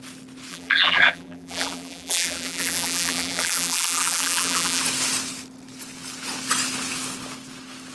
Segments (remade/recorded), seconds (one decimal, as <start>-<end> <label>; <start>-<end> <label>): 0.0-0.5 recorded; 0.5-4.8 remade; 4.8-7.9 recorded